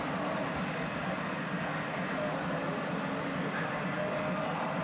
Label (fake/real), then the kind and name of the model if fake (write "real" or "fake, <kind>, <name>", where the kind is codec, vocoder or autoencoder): real